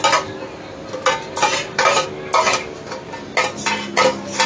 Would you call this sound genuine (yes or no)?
yes